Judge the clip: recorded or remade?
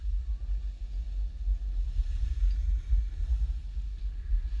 recorded